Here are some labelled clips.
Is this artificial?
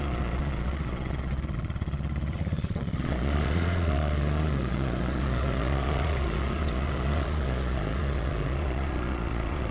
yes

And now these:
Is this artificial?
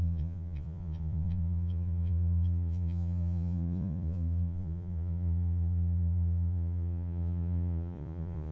yes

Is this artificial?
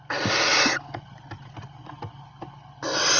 no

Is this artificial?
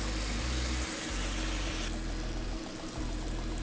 no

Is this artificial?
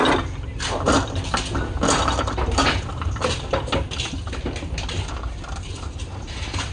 no